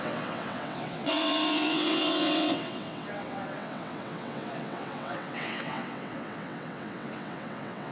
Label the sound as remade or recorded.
remade